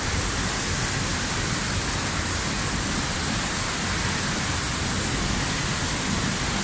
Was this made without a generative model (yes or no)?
yes